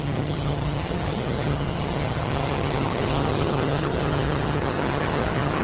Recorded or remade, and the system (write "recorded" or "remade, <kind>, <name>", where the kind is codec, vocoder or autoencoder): remade, vocoder, HiFi-GAN